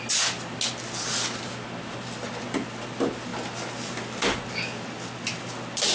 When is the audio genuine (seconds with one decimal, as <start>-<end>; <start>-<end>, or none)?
0.0-5.9